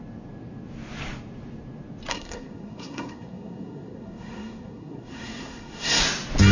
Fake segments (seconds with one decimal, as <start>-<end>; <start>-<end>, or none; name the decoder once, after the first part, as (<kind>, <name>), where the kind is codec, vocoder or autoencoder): 2.1-6.0 (codec, SNAC)